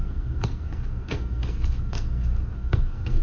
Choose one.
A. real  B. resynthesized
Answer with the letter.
B